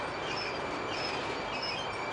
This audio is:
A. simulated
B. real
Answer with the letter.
B